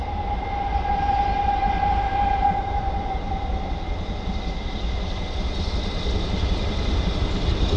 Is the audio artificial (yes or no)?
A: no